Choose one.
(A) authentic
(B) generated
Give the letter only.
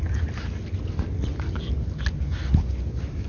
A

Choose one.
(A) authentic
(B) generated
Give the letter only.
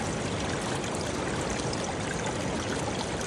A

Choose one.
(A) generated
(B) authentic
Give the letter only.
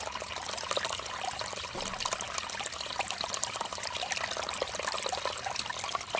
B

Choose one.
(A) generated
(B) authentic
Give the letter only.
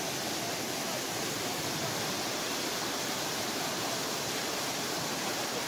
B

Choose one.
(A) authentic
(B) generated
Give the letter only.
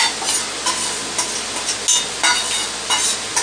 A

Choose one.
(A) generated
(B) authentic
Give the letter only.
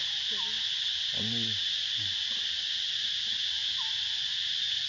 B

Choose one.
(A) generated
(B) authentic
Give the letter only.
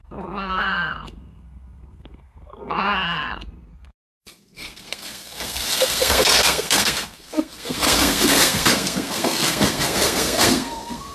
A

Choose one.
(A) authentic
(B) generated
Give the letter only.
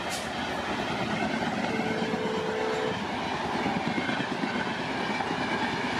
A